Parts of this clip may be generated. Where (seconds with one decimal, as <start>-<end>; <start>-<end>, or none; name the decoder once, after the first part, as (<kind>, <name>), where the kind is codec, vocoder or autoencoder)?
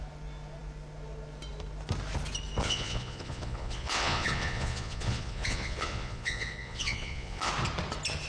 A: 2.6-7.5 (vocoder, Vocos)